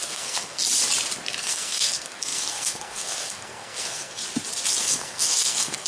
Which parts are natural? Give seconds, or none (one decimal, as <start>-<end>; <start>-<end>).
0.6-1.4; 4.2-4.8